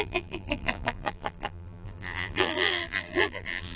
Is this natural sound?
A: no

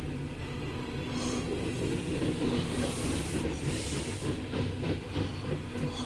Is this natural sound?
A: yes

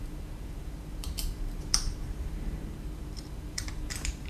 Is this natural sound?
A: no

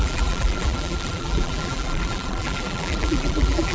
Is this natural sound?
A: no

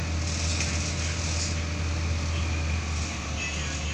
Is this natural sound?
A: yes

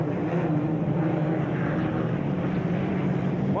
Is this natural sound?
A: yes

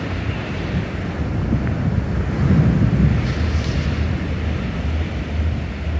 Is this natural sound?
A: yes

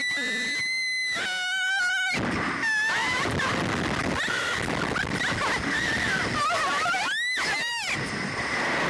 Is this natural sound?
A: yes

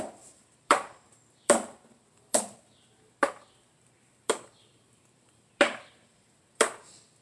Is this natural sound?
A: no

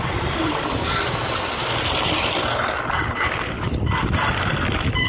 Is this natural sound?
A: no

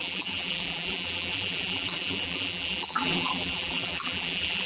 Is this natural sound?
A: no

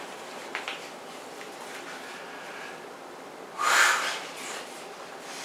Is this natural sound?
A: no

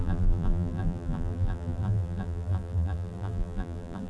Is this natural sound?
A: no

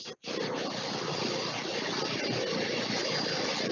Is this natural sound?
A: yes